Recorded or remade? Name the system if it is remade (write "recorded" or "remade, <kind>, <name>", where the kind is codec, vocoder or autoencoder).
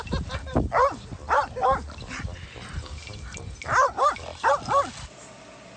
recorded